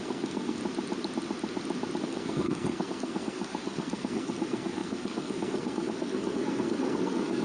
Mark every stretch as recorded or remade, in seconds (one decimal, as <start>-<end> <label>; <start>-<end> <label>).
0.0-0.6 remade; 0.6-2.0 recorded; 2.0-7.4 remade